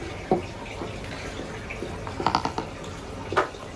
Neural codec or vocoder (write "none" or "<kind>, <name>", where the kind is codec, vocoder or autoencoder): none